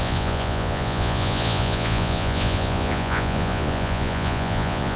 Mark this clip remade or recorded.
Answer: remade